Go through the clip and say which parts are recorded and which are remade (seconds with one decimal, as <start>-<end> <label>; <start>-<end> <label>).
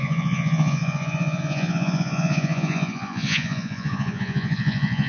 0.0-5.1 remade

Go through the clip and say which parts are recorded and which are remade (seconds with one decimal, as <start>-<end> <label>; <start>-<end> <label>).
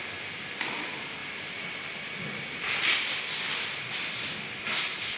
0.0-5.2 recorded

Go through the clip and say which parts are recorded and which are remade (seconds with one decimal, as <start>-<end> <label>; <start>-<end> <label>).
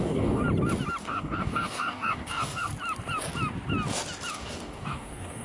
0.0-0.4 remade; 0.4-1.0 recorded; 1.0-2.7 remade; 2.7-4.3 recorded; 4.3-5.4 remade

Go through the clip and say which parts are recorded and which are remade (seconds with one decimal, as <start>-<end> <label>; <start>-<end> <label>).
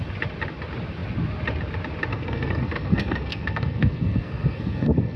0.0-2.1 recorded; 2.1-5.2 remade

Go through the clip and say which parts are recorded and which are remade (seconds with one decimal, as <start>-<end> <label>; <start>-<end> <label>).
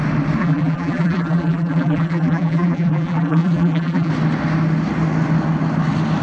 0.0-0.4 recorded; 0.4-4.1 remade; 4.1-6.2 recorded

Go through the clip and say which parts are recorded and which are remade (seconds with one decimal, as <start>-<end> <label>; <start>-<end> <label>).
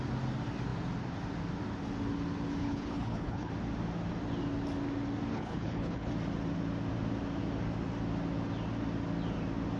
0.0-2.6 recorded; 2.6-3.5 remade; 3.5-5.3 recorded; 5.3-6.1 remade; 6.1-9.8 recorded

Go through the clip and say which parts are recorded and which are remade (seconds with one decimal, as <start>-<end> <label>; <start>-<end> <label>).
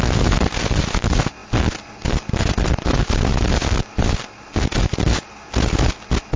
0.0-6.4 recorded